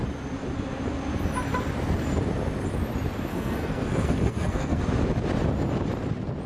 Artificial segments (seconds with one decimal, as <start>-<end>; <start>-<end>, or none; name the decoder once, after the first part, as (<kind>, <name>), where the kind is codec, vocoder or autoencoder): 3.3-4.8 (codec, SNAC)

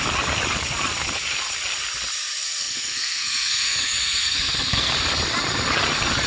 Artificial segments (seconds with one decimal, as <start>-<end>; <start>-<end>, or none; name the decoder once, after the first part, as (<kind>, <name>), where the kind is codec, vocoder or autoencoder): 2.4-4.9 (codec, SNAC)